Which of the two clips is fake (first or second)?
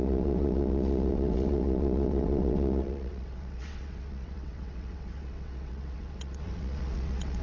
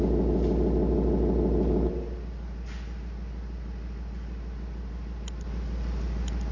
first